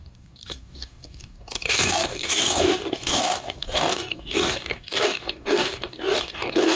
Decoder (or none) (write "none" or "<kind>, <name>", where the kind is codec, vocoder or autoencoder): codec, DAC